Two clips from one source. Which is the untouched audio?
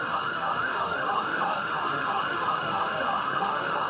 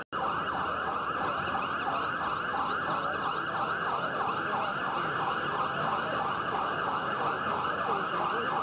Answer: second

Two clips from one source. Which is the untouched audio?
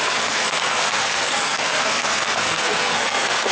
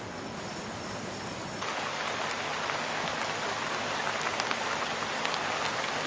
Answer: second